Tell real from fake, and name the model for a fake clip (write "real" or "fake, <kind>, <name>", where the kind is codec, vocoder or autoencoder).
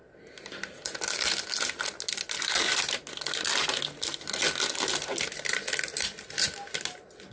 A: real